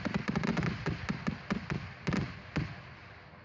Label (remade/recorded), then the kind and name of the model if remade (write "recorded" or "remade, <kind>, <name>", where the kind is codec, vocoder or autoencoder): recorded